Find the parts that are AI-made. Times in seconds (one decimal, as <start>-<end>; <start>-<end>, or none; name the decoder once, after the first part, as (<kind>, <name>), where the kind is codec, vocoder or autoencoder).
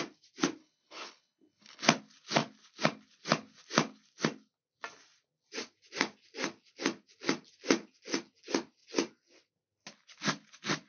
0.6-2.0 (codec, HILCodec)